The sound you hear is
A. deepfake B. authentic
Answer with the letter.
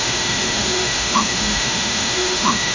A